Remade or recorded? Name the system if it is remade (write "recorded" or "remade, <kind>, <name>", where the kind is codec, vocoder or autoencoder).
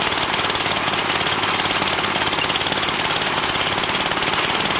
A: recorded